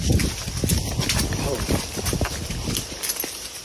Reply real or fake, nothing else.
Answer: real